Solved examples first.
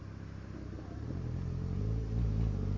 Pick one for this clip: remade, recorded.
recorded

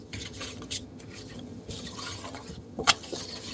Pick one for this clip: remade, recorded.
remade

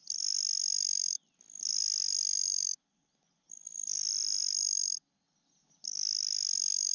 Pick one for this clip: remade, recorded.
recorded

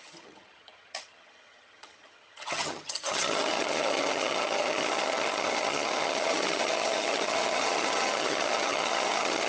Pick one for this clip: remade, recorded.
remade